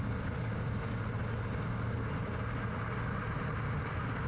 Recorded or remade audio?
recorded